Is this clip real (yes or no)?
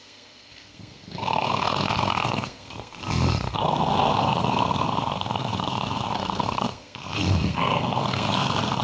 no